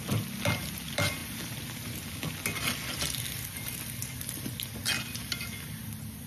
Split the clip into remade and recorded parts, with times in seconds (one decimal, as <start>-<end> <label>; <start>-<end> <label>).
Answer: 0.0-6.3 recorded